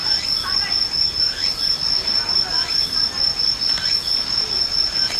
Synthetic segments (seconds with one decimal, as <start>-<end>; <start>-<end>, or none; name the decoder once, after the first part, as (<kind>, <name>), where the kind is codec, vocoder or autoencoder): none